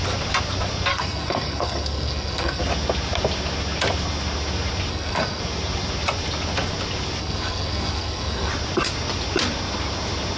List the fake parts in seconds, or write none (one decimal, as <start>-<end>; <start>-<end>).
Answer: 0.9-2.6; 4.9-5.4; 7.2-8.5